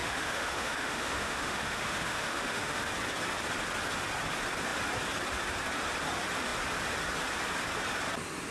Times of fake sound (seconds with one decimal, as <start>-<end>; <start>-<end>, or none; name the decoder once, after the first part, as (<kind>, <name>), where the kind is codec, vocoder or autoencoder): 0.0-2.9 (autoencoder, DAC-VAE)